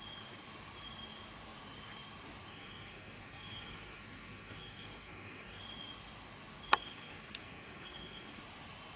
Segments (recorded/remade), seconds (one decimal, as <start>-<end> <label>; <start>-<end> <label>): 0.0-2.5 recorded; 2.5-5.6 remade; 5.6-6.8 recorded; 6.8-8.4 remade; 8.4-9.0 recorded